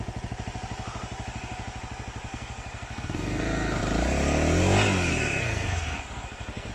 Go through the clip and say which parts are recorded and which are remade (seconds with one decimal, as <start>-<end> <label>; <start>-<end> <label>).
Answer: 0.0-2.3 recorded; 2.3-3.8 remade; 3.8-5.1 recorded; 5.1-6.7 remade